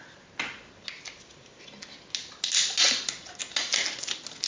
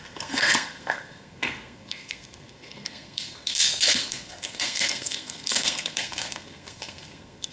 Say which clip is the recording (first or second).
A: first